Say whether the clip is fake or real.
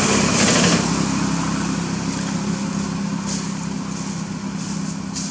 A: real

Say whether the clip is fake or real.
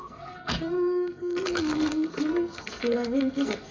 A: fake